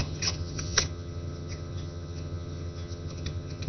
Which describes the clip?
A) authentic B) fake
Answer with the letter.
B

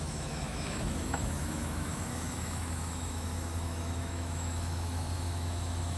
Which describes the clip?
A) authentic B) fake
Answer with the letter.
B